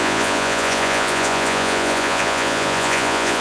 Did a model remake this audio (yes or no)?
yes